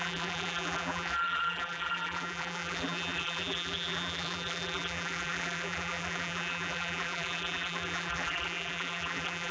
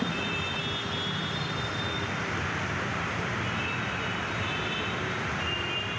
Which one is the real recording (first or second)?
second